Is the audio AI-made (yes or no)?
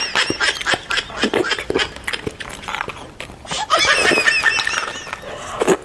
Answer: no